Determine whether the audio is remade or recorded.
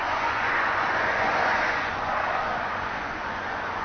remade